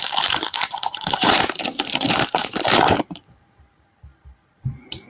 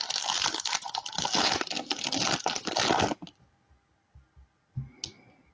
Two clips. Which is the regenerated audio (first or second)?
first